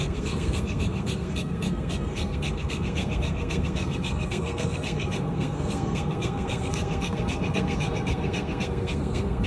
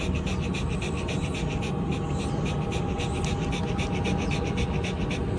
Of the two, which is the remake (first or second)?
first